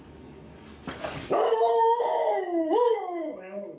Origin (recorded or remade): remade